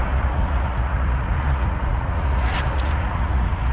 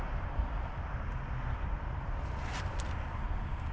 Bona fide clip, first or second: second